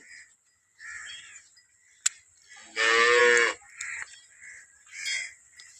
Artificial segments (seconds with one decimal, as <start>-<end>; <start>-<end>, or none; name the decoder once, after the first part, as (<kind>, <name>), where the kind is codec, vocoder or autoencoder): none